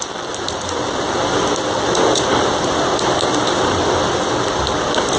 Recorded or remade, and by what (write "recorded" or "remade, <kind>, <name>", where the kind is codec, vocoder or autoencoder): recorded